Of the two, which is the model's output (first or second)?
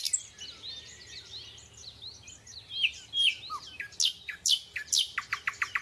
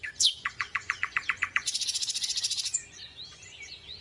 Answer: second